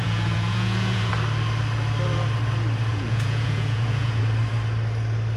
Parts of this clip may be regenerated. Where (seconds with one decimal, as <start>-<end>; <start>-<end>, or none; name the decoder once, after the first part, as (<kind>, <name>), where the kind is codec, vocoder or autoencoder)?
0.0-1.1 (vocoder, Vocos); 2.9-4.2